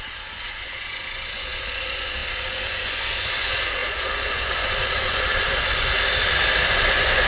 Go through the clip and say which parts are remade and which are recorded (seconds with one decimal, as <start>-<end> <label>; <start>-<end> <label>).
0.0-5.9 remade; 5.9-6.7 recorded; 6.7-7.3 remade